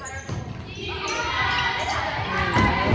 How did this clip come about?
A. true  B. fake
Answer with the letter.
A